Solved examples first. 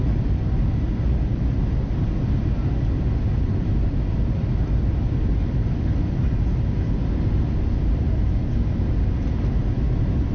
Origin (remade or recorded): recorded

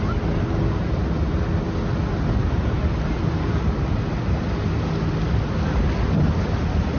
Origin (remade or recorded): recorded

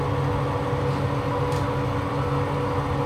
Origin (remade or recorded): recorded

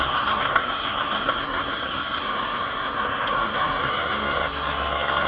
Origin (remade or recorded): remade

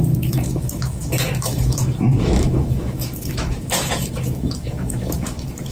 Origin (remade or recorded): remade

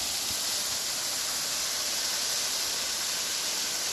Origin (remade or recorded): recorded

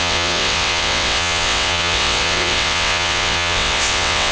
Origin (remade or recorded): remade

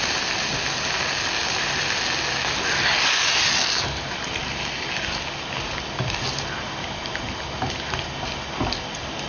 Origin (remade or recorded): recorded